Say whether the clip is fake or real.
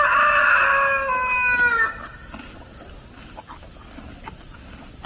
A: real